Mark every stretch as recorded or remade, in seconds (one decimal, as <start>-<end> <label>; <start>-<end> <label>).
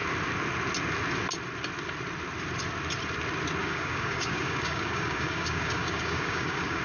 0.0-3.6 recorded; 3.6-6.8 remade